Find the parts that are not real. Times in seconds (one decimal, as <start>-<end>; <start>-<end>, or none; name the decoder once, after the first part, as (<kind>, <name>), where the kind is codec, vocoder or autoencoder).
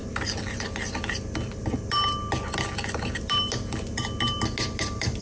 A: none